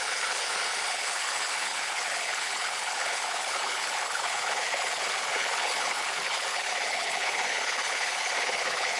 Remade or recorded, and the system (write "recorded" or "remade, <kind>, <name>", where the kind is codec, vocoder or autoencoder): remade, codec, HILCodec